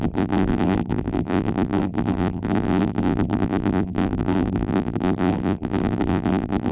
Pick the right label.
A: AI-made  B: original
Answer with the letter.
A